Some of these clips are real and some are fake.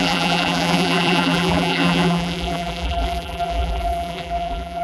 fake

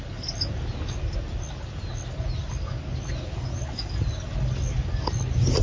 real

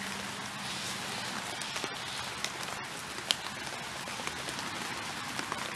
real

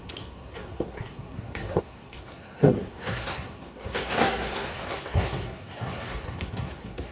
fake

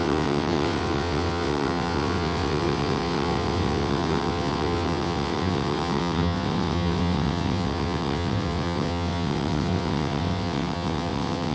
fake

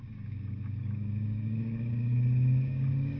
fake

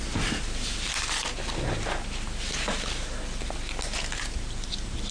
real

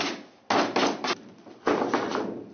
real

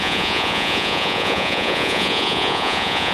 fake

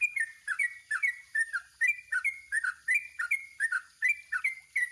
real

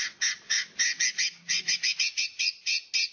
real